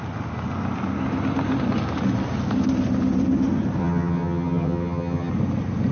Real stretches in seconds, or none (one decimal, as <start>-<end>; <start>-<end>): 0.0-3.8; 5.3-5.9